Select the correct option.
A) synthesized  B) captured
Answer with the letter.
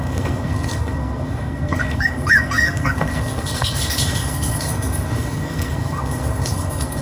A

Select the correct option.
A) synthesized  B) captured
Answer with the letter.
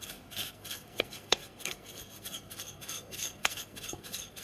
A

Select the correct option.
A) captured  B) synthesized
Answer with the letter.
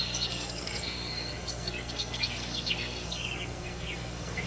B